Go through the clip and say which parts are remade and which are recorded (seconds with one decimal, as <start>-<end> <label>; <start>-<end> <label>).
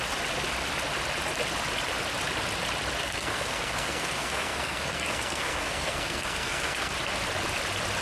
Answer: 0.0-3.0 recorded; 3.0-6.9 remade; 6.9-8.0 recorded